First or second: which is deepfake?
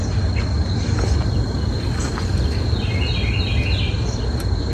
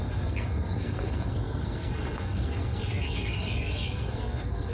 second